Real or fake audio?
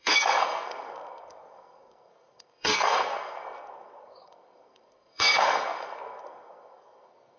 fake